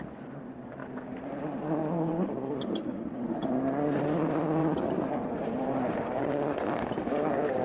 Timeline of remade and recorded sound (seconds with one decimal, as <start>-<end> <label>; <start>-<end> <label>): 0.0-0.8 recorded; 0.8-1.4 remade; 1.4-1.8 recorded; 1.8-2.5 remade; 2.5-4.6 recorded; 4.6-6.2 remade; 6.2-7.6 recorded